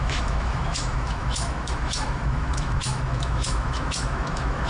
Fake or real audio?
fake